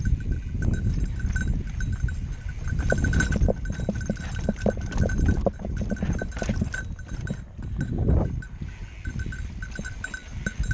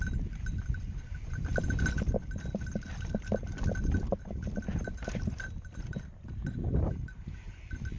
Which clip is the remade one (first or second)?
second